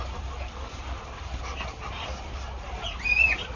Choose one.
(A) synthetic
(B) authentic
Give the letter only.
B